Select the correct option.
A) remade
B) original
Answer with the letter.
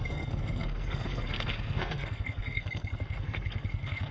A